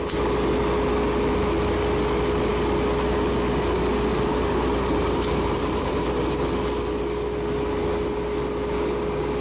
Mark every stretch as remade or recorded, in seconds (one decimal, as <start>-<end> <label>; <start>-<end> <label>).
0.0-4.1 recorded; 4.1-6.0 remade; 6.0-9.4 recorded